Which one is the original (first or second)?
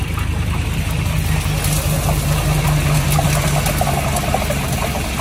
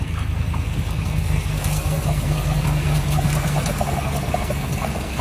first